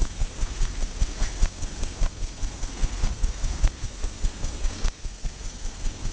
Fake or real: fake